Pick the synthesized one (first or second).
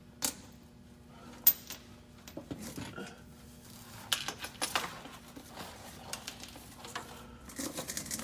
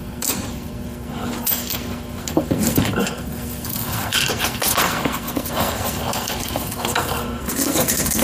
second